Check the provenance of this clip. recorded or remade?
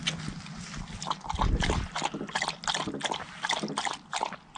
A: recorded